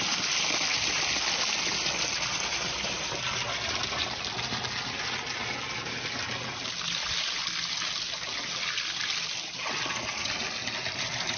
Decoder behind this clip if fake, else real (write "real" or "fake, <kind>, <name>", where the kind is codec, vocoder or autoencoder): real